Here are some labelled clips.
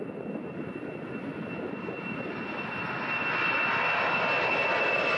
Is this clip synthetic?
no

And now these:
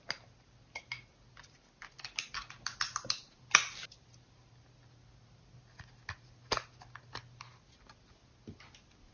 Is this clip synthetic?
no